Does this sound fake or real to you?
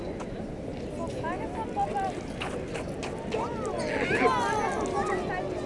real